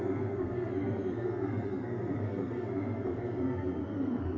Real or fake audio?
fake